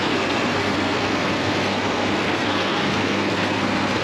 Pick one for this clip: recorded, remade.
remade